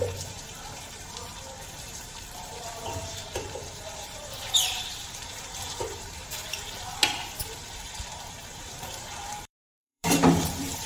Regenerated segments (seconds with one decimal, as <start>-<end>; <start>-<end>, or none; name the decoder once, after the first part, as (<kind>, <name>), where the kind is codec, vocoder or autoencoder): 0.0-7.0 (vocoder, BigVGAN v2); 7.5-10.9